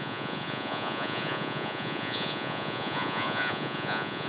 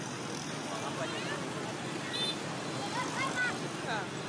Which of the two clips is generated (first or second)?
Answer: first